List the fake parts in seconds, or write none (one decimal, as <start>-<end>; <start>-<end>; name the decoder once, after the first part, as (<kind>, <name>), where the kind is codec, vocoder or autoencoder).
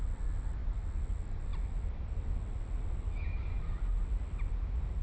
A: none